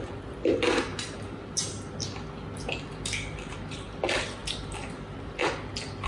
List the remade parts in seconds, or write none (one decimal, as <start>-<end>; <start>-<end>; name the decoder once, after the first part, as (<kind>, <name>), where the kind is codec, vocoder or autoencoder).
none